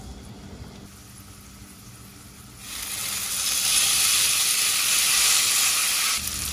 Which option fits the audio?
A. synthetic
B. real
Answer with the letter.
B